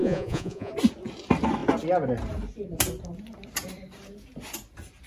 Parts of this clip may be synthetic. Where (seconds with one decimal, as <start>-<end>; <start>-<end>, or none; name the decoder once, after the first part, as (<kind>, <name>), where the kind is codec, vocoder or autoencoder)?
0.0-0.7 (vocoder, Vocos)